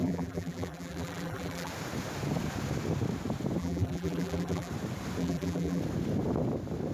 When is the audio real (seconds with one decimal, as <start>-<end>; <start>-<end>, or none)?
1.7-3.6; 4.7-5.2; 5.8-6.9